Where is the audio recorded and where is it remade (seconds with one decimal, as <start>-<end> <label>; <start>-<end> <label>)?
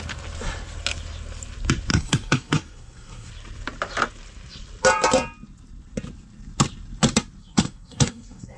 0.0-1.9 recorded; 1.9-3.3 remade; 3.3-7.4 recorded; 7.4-8.6 remade